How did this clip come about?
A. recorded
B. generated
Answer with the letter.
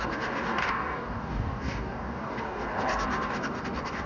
B